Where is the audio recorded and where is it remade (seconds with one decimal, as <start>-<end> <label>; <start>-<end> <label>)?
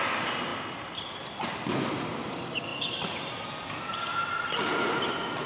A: 0.0-5.5 recorded